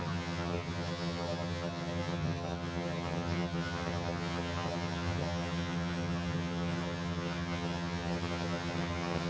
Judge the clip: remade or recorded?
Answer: remade